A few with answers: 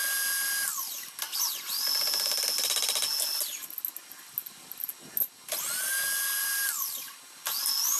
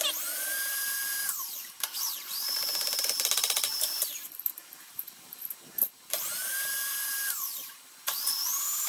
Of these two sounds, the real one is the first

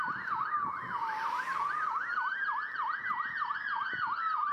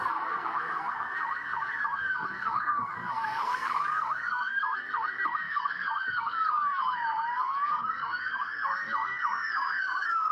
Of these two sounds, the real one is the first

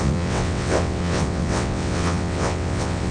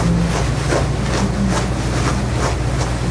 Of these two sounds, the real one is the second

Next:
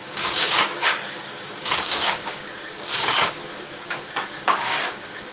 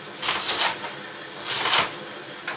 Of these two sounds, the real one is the second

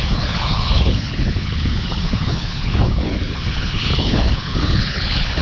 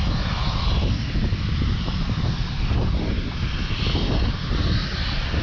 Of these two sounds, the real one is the second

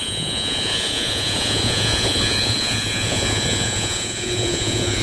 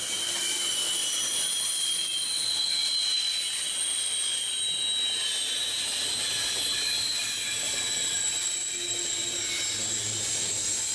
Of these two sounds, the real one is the second